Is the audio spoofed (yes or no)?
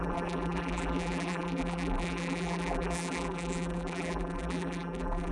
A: yes